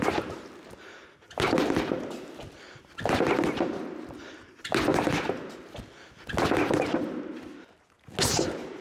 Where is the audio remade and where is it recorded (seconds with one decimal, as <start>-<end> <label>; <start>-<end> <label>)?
0.0-8.8 recorded

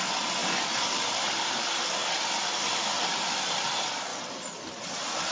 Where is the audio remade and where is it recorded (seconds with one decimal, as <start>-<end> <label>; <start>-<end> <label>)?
0.0-0.4 recorded; 0.4-3.6 remade; 3.6-5.3 recorded

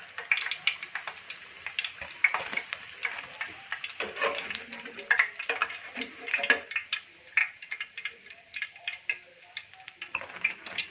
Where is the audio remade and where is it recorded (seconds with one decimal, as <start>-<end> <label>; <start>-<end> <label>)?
0.0-5.6 recorded; 5.6-6.3 remade; 6.3-7.4 recorded; 7.4-9.4 remade; 9.4-10.9 recorded

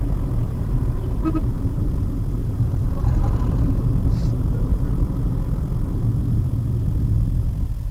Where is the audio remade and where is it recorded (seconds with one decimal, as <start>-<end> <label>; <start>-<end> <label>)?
0.0-0.4 recorded; 0.4-1.9 remade; 1.9-2.4 recorded; 2.4-3.1 remade; 3.1-4.2 recorded; 4.2-4.9 remade; 4.9-7.9 recorded